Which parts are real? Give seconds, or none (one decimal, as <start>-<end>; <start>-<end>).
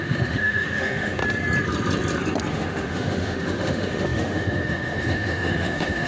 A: 1.2-2.5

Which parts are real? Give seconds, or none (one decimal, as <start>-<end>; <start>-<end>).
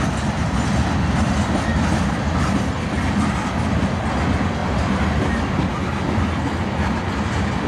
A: 0.0-4.6; 5.2-7.7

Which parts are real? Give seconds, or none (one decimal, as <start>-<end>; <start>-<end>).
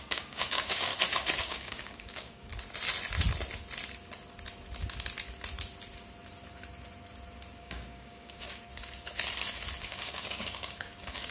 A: 0.9-1.4; 2.5-7.6; 8.7-9.8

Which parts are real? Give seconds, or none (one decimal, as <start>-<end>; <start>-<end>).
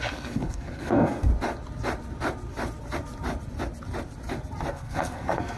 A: 1.3-4.7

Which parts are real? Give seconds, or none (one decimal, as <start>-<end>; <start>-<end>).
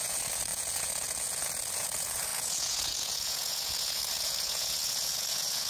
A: none